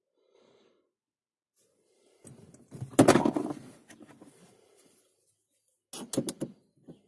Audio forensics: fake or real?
real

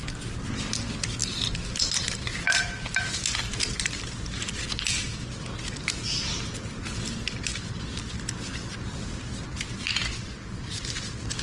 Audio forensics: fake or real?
real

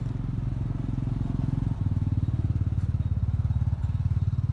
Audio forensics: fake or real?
real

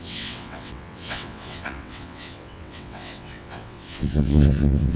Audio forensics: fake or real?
fake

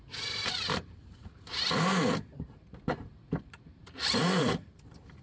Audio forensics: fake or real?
fake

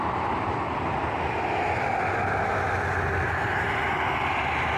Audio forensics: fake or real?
real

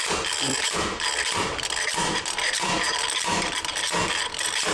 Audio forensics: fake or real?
fake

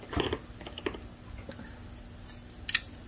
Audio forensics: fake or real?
real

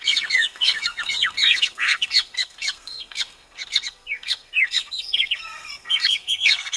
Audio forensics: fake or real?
fake